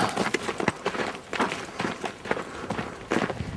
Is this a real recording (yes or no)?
yes